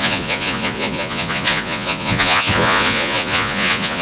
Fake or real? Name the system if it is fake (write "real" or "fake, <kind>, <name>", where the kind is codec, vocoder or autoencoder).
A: fake, vocoder, Vocos